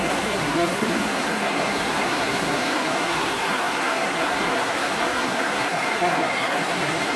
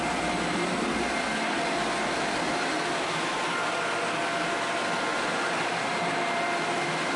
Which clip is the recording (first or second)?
second